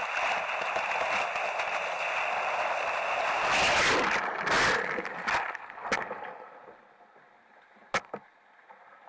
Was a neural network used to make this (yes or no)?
no